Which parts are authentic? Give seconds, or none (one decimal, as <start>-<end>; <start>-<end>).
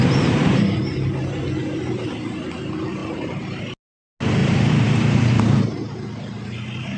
0.8-3.0; 3.6-4.4; 5.4-7.0